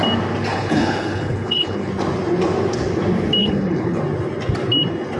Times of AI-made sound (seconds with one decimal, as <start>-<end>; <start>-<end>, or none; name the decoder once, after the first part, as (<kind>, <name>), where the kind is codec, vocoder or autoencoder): 0.5-1.9 (codec, HILCodec); 3.4-4.0